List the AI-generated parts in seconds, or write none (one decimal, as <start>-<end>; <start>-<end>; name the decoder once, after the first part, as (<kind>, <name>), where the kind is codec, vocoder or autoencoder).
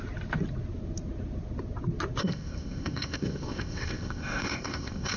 2.2-5.2 (codec, ZipCodec)